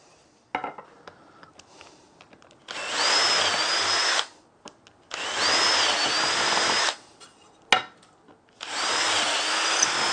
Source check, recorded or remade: recorded